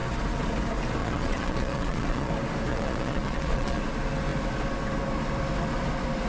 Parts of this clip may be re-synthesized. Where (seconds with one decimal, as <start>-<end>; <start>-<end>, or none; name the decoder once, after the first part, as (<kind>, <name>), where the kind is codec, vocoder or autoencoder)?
1.0-2.3 (vocoder, Vocos); 2.7-3.8